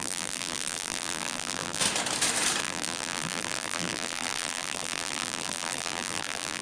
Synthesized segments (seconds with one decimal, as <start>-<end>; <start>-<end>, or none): 0.0-1.8; 2.6-6.6